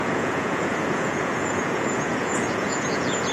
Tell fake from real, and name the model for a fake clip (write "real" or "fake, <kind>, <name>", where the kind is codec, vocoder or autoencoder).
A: fake, vocoder, Vocos